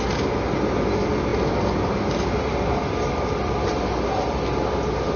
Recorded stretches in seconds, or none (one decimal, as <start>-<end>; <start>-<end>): 0.0-5.2